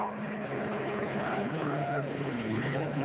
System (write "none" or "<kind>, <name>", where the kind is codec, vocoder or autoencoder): codec, HILCodec